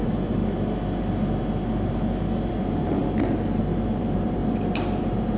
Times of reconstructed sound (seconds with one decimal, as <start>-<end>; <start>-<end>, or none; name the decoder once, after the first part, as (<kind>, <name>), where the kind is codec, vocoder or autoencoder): 0.0-0.4 (vocoder, BigVGAN v2); 2.5-3.0; 3.6-4.4; 5.0-5.4